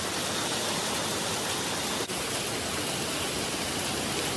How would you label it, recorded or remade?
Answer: recorded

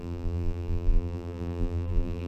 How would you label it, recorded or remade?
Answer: remade